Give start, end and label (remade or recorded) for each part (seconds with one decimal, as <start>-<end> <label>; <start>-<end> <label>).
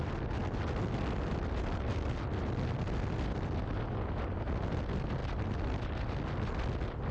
0.0-7.1 recorded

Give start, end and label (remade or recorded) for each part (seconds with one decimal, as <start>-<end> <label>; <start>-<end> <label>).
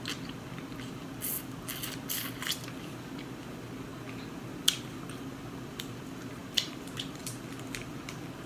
0.0-6.4 recorded; 6.4-7.2 remade; 7.2-8.5 recorded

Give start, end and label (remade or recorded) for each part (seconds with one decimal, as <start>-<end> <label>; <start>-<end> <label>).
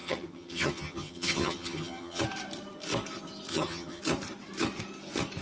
0.0-2.2 remade; 2.2-3.5 recorded; 3.5-4.0 remade; 4.0-5.4 recorded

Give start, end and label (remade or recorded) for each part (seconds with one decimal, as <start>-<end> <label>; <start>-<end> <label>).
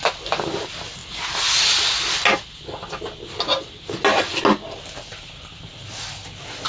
0.0-6.7 recorded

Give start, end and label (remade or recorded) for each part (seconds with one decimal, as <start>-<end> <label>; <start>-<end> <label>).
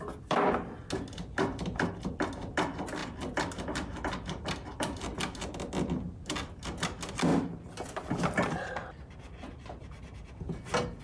0.0-11.0 recorded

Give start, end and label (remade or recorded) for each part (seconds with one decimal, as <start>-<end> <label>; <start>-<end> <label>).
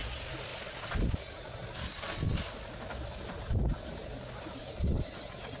0.0-5.6 recorded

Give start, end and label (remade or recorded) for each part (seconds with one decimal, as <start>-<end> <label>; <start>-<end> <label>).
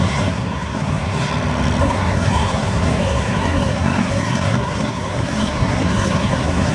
0.0-1.3 remade; 1.3-1.8 recorded; 1.8-6.7 remade